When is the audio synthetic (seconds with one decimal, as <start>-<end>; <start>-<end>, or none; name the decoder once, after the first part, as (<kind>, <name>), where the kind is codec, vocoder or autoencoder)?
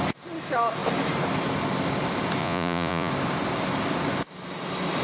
2.4-3.1 (vocoder, Vocos)